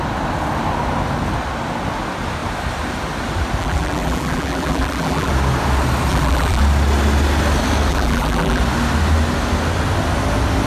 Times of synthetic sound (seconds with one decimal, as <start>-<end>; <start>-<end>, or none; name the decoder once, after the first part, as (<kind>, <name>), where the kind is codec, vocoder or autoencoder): 3.6-5.3 (vocoder, BigVGAN v2); 6.1-6.6; 7.9-8.6